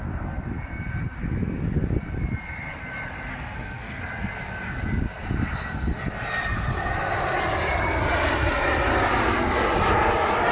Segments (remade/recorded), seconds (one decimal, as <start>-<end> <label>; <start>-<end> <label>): 0.0-3.3 recorded; 3.3-4.0 remade; 4.0-10.5 recorded